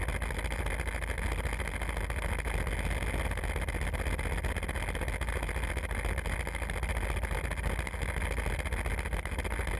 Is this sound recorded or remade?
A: recorded